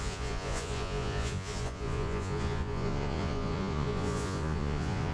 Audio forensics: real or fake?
fake